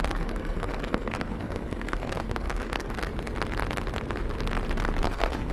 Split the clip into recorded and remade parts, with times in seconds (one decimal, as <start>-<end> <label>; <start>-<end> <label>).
0.0-3.1 remade; 3.1-5.0 recorded; 5.0-5.5 remade

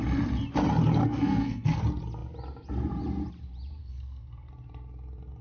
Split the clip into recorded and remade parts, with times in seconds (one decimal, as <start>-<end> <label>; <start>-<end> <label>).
0.0-1.0 recorded; 1.0-1.8 remade; 1.8-3.8 recorded; 3.8-4.5 remade; 4.5-5.4 recorded

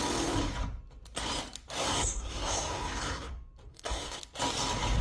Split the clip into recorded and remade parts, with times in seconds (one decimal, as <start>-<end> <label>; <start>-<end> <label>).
0.0-1.8 recorded; 1.8-3.3 remade; 3.3-3.7 recorded; 3.7-4.2 remade; 4.2-5.0 recorded

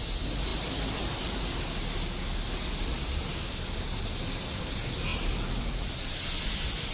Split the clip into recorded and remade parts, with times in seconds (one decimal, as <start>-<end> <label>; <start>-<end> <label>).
0.0-6.9 recorded

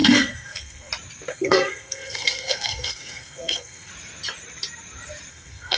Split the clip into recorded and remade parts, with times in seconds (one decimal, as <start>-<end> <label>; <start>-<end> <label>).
0.0-0.9 remade; 0.9-1.3 recorded; 1.3-3.9 remade; 3.9-5.3 recorded; 5.3-5.8 remade

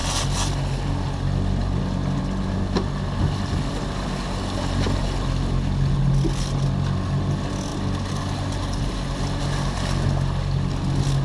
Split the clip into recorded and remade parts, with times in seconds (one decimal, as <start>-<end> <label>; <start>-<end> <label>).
0.0-11.2 recorded